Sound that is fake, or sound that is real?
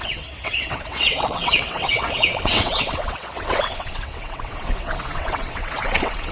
fake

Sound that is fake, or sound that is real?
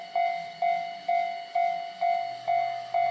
real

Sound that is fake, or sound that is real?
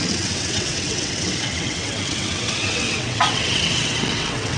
fake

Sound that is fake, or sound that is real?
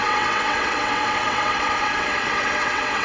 fake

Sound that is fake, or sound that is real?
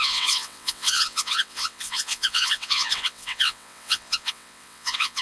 fake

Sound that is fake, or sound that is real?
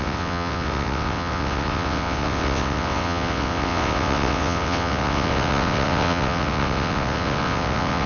fake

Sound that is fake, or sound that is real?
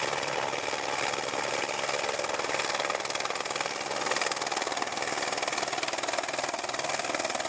real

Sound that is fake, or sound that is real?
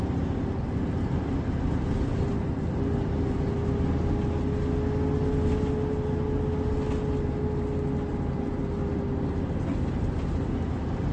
real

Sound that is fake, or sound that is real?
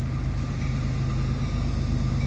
real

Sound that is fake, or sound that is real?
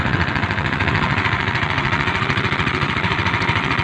fake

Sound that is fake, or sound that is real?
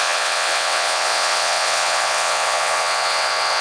fake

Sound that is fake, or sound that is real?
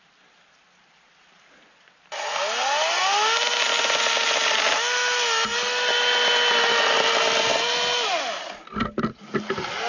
real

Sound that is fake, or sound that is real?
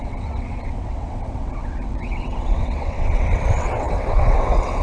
fake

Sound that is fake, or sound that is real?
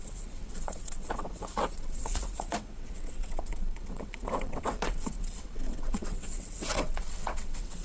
fake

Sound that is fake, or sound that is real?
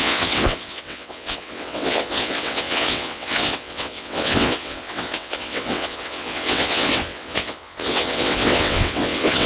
fake